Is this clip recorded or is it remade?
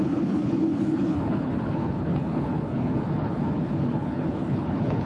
remade